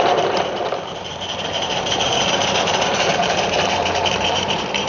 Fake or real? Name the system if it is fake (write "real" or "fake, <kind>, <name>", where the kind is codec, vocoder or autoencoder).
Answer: fake, vocoder, BigVGAN v2